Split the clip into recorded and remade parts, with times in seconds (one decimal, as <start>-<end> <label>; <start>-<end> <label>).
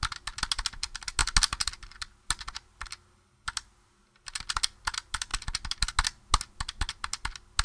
0.0-7.6 recorded